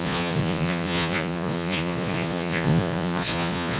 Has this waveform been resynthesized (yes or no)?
yes